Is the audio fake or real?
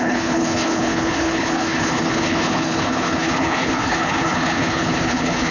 fake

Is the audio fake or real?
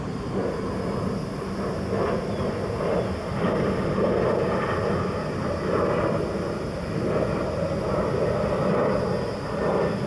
real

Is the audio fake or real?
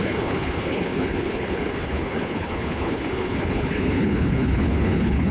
fake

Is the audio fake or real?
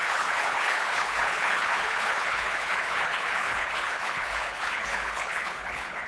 fake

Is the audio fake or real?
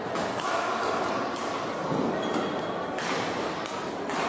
real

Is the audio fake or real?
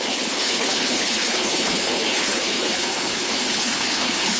fake